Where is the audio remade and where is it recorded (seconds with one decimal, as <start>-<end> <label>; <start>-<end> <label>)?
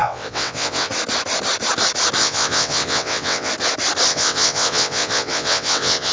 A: 0.0-0.9 remade; 0.9-2.2 recorded; 2.2-3.5 remade; 3.5-4.1 recorded; 4.1-6.1 remade